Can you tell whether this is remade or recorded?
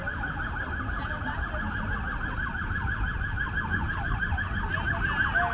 recorded